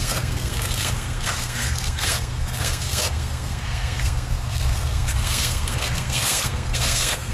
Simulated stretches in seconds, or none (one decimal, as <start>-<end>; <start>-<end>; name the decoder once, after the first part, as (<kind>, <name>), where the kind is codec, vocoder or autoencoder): 0.0-7.3 (codec, SNAC)